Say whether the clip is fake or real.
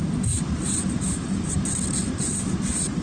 real